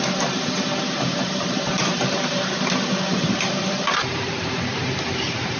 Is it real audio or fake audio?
fake